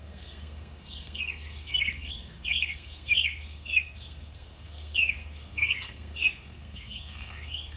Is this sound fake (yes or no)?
yes